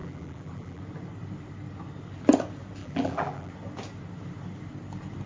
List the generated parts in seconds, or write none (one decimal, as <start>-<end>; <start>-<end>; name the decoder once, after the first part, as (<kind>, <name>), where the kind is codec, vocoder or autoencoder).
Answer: 0.0-0.8 (vocoder, BigVGAN v2); 2.8-3.5